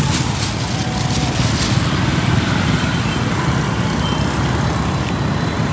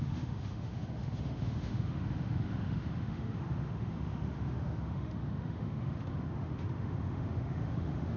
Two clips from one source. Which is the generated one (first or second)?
second